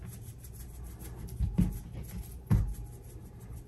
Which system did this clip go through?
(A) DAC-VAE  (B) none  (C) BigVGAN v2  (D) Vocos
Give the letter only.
B